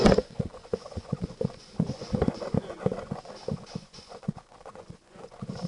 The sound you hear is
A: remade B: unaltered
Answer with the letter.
A